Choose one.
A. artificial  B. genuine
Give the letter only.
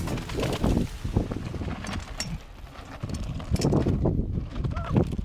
B